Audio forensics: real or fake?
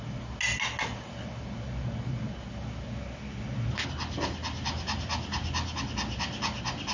real